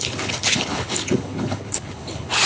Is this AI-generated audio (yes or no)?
yes